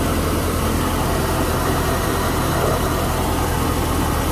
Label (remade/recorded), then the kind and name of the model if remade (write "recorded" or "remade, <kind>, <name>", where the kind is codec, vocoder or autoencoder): recorded